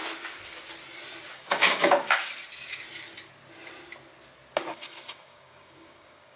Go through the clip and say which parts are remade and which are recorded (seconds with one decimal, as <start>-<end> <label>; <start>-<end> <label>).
0.0-1.3 recorded; 1.3-2.3 remade; 2.3-4.7 recorded; 4.7-6.4 remade